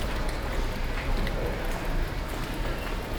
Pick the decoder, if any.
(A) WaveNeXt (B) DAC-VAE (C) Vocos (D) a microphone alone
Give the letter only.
D